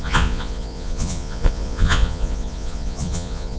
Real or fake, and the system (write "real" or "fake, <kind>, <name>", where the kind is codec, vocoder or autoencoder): fake, vocoder, Vocos